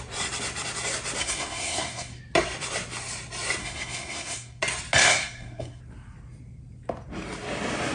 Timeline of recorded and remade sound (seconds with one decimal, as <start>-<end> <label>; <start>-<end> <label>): 0.0-1.2 recorded; 1.2-2.2 remade; 2.2-3.6 recorded; 3.6-4.6 remade; 4.6-5.0 recorded; 5.0-5.8 remade; 5.8-7.9 recorded